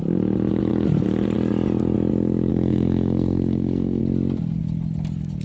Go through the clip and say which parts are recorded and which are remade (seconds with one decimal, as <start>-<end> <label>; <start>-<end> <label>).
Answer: 0.0-2.5 recorded; 2.5-4.0 remade; 4.0-5.4 recorded